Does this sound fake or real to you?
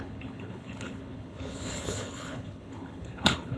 fake